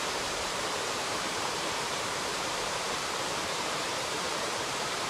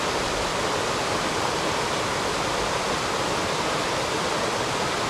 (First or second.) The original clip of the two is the second